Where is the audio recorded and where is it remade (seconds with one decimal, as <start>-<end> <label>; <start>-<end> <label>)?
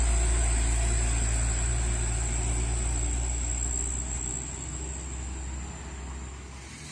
0.0-6.9 recorded